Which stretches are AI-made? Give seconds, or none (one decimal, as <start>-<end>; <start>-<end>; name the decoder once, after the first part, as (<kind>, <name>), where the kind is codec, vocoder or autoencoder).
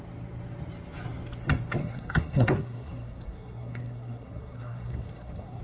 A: 1.8-5.6 (codec, SNAC)